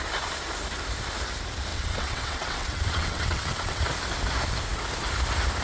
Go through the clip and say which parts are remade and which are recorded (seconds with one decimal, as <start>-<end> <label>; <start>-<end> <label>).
0.0-1.7 recorded; 1.7-3.8 remade; 3.8-5.6 recorded

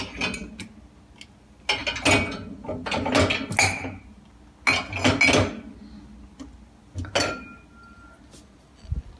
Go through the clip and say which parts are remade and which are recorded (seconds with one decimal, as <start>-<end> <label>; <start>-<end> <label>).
0.0-9.2 recorded

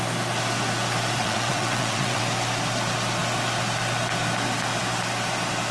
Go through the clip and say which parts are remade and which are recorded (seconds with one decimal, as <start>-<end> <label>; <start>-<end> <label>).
0.0-1.2 recorded; 1.2-2.2 remade; 2.2-5.7 recorded

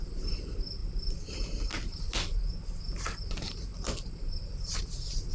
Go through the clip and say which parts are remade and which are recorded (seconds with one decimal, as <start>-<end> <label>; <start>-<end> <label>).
0.0-5.3 recorded